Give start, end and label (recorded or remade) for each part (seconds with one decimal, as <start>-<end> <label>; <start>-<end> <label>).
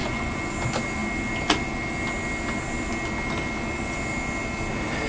0.0-0.5 remade; 0.5-5.1 recorded